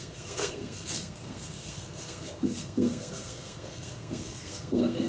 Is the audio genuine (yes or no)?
no